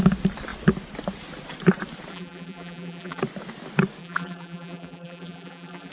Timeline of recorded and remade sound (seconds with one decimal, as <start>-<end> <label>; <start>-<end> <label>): 0.0-2.1 recorded; 2.1-3.2 remade; 3.2-4.0 recorded; 4.0-5.9 remade